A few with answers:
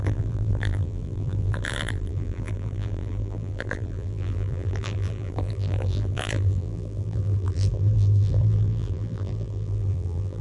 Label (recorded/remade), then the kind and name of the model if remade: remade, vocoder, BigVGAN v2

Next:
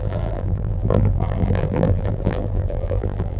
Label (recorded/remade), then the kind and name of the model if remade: remade, vocoder, BigVGAN v2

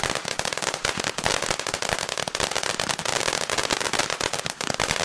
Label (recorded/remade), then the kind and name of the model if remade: recorded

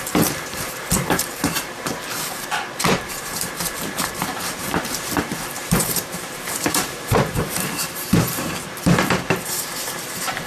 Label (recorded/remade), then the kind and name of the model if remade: remade, vocoder, BigVGAN v2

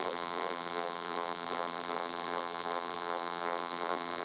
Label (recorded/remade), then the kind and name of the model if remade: remade, vocoder, BigVGAN v2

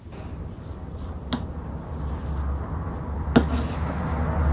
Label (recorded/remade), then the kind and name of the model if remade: recorded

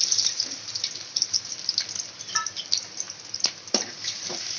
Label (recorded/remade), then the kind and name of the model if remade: remade, vocoder, BigVGAN v2